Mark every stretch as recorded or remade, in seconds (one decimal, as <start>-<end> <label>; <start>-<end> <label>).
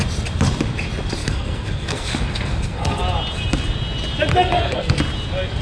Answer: 0.0-1.2 recorded; 1.2-3.0 remade; 3.0-4.3 recorded; 4.3-5.0 remade; 5.0-5.6 recorded